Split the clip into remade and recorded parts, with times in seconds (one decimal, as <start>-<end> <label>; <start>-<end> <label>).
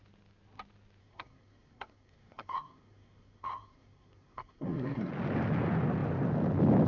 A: 0.0-1.0 recorded; 1.0-5.1 remade; 5.1-6.9 recorded